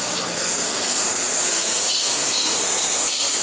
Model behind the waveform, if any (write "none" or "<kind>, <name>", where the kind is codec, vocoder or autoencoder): codec, SNAC